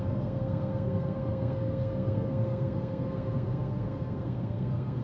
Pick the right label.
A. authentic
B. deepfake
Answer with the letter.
B